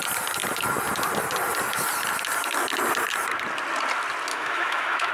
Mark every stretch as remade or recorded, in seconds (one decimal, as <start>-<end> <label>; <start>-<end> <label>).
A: 0.0-4.3 recorded; 4.3-5.1 remade